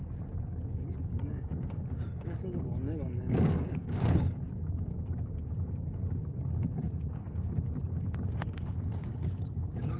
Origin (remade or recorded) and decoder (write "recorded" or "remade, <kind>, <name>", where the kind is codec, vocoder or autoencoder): remade, codec, DAC